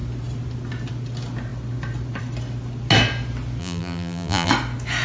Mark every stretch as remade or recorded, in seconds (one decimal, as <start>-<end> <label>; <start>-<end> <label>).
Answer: 0.0-3.6 recorded; 3.6-4.5 remade; 4.5-5.0 recorded